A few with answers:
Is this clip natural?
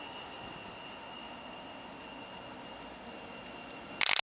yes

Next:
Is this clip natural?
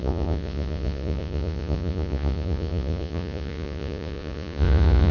no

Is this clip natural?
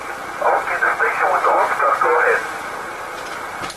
yes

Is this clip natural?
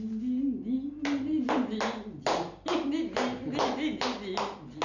yes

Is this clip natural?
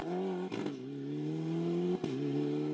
yes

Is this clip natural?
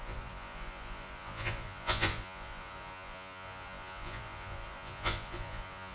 no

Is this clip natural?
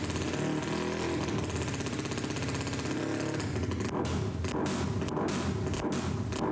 yes